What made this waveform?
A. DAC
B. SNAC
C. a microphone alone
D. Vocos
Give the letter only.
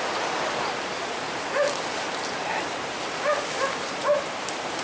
C